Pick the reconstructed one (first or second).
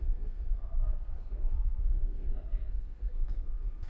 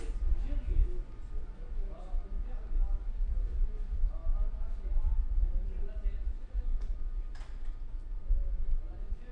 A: first